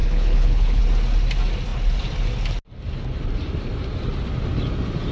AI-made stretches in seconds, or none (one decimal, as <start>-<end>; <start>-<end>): 0.0-0.8